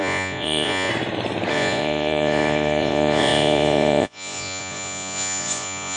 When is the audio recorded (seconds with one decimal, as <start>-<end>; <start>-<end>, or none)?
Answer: 0.9-1.5